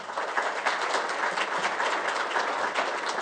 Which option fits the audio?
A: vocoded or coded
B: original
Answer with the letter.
B